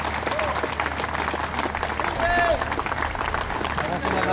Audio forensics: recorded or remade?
recorded